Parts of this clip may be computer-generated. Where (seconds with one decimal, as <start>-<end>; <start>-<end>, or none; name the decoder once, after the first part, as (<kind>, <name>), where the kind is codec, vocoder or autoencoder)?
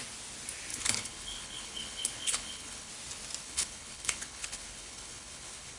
0.7-2.9 (codec, HILCodec); 3.4-5.8